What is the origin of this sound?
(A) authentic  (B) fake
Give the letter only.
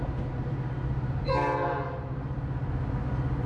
A